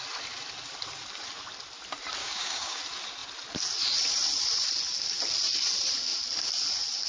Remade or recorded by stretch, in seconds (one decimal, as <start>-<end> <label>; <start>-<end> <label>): 0.0-2.2 recorded; 2.2-2.8 remade; 2.8-7.1 recorded